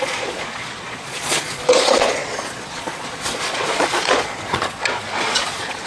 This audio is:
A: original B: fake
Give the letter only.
B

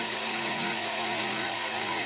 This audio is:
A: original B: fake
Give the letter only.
B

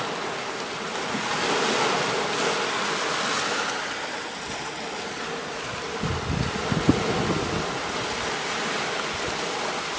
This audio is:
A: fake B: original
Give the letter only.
B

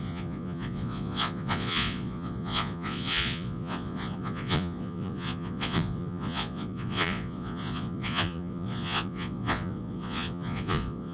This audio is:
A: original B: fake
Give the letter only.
B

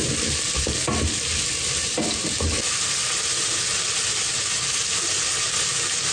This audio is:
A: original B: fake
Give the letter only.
A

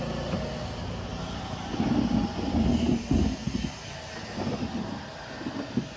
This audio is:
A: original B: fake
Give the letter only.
A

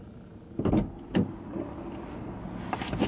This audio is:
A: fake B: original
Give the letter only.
B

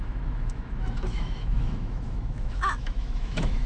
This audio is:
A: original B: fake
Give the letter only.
B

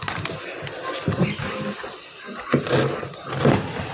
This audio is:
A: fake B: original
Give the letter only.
B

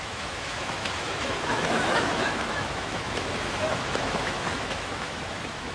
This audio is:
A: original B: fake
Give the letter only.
B